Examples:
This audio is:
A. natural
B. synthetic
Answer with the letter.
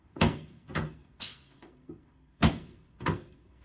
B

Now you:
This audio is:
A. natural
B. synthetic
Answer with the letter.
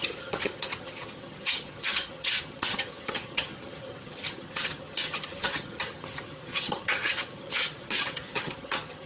B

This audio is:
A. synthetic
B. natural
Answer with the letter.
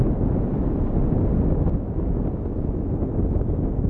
B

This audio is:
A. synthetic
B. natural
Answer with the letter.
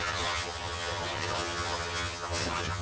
A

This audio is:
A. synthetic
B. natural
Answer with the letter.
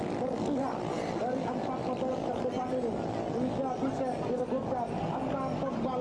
B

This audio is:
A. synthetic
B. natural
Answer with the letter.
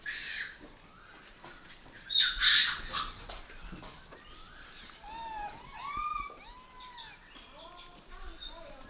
B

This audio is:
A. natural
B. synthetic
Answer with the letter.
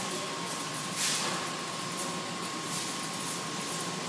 A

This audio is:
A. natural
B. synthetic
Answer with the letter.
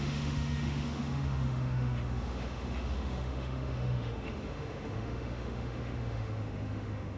B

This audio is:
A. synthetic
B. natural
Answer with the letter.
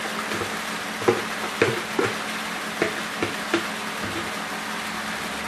B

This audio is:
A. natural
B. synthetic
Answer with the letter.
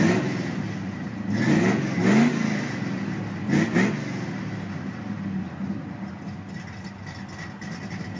A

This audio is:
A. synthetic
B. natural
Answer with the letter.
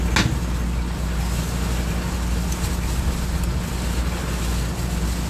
B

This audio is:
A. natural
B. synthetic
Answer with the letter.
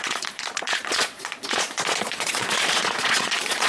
B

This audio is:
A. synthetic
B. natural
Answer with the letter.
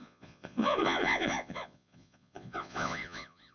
A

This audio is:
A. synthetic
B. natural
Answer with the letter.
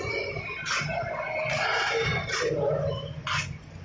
B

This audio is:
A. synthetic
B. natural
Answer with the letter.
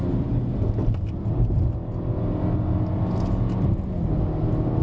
B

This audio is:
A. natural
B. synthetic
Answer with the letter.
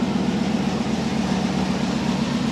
A